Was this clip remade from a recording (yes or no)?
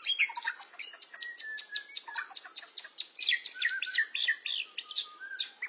no